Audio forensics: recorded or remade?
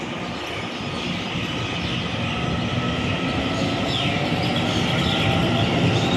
recorded